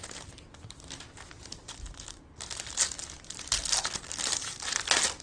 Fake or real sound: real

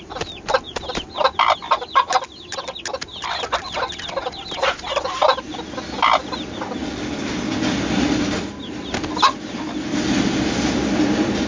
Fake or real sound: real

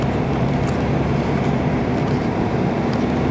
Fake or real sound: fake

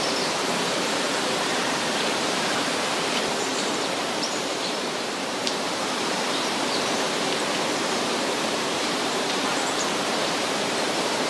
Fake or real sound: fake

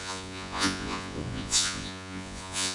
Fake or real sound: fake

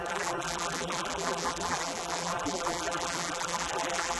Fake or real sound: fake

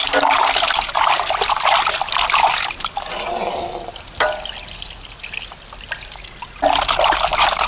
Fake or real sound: real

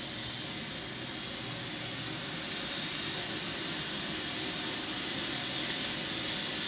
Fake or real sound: real